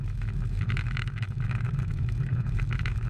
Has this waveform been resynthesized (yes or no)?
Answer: yes